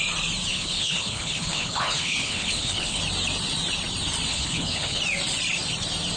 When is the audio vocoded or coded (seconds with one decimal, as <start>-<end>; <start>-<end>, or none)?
0.5-3.0; 4.3-5.0